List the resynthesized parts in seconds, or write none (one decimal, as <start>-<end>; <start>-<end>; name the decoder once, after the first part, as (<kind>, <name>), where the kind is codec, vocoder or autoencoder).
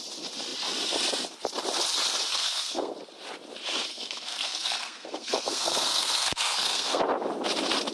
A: 2.3-2.9 (codec, SNAC); 3.9-7.0